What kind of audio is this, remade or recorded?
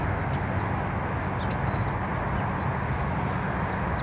recorded